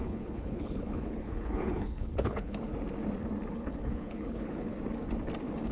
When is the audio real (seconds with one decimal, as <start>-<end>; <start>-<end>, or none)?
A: 2.7-3.5; 4.7-5.7